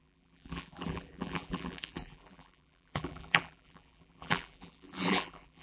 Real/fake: fake